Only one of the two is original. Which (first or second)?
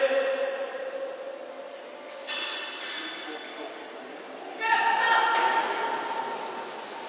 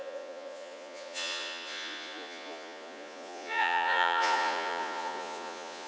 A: first